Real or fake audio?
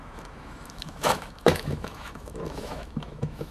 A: fake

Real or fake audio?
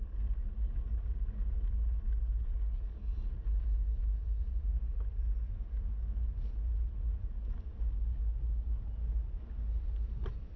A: real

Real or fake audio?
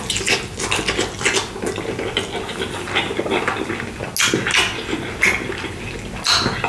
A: real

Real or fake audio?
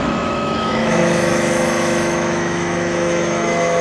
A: fake